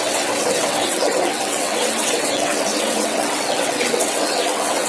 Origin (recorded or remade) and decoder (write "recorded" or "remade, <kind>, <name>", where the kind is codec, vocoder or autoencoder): remade, vocoder, WaveNeXt